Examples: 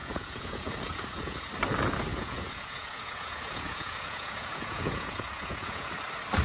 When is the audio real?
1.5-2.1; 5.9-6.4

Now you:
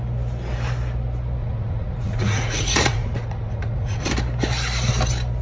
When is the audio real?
0.0-1.4; 4.1-5.4

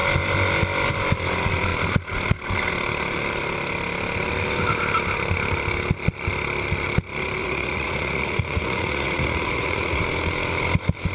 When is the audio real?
0.0-7.4; 10.0-11.1

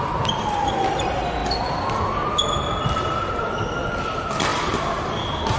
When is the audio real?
0.0-5.6

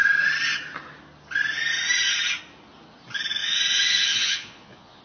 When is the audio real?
0.0-3.4

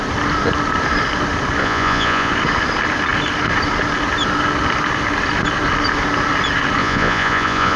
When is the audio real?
0.0-1.6; 2.3-6.8

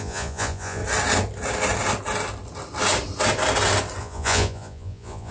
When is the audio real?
0.8-4.0